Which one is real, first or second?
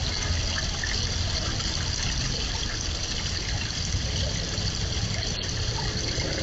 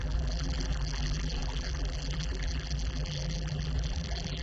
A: first